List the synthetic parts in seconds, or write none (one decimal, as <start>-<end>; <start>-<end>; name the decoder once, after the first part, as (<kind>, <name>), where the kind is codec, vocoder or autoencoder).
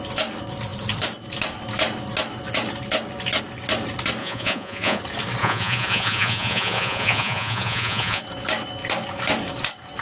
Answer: 4.2-5.0 (vocoder, Vocos); 5.4-8.2